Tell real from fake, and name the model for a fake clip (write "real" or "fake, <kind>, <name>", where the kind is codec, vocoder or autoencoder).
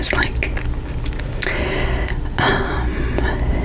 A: real